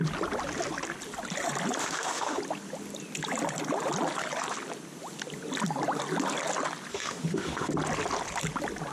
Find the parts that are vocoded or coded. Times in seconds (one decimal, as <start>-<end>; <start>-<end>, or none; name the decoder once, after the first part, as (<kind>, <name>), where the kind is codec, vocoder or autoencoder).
1.8-2.4 (autoencoder, DAC-VAE); 6.9-7.7